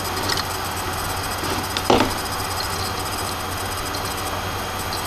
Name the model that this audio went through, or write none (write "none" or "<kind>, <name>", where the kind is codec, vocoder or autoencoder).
none